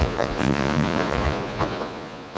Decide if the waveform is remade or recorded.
remade